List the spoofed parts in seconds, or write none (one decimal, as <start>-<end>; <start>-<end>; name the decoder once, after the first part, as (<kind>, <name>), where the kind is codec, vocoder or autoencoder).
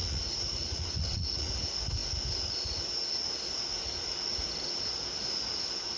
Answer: 0.0-1.5 (vocoder, Vocos)